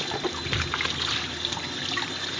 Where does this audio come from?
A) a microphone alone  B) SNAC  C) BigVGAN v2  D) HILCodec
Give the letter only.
A